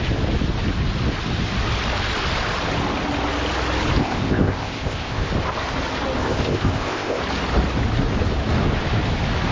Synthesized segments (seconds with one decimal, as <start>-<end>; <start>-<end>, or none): 4.0-5.3; 6.2-7.2